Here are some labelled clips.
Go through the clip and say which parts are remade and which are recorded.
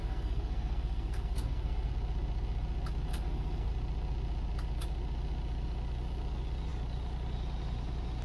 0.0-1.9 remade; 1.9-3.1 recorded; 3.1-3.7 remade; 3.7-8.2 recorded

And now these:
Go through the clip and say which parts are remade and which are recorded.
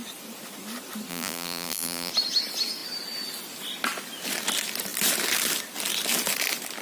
0.0-1.1 recorded; 1.1-2.1 remade; 2.1-6.8 recorded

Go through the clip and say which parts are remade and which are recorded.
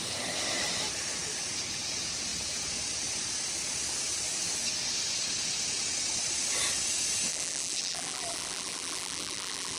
0.0-7.3 recorded; 7.3-9.8 remade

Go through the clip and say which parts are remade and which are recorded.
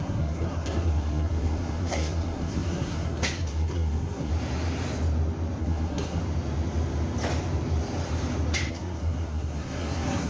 0.0-4.3 remade; 4.3-5.6 recorded; 5.6-6.2 remade; 6.2-8.7 recorded; 8.7-10.3 remade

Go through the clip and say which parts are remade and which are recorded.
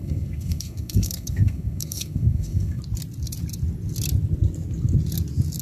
0.0-2.8 remade; 2.8-5.6 recorded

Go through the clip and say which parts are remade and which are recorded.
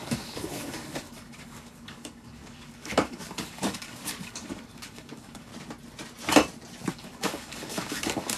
0.0-5.5 remade; 5.5-6.9 recorded; 6.9-8.4 remade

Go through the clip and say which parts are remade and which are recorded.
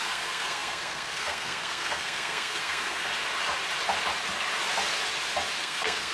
0.0-3.1 remade; 3.1-5.6 recorded; 5.6-6.1 remade